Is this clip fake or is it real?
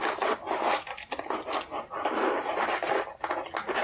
real